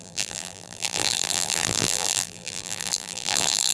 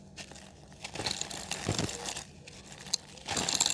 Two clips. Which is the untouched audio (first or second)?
second